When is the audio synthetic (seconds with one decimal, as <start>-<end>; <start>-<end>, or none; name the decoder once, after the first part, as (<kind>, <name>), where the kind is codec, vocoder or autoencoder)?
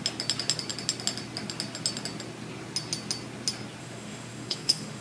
3.8-5.0 (autoencoder, DAC-VAE)